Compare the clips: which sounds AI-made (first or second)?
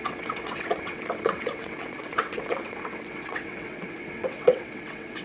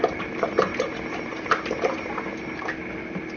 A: first